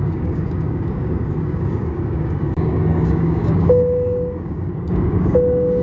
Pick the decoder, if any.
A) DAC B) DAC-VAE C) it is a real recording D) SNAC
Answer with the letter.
A